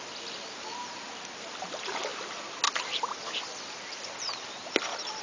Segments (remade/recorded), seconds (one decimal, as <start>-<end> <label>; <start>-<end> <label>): 0.0-5.2 recorded